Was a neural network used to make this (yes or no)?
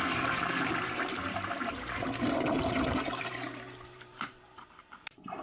yes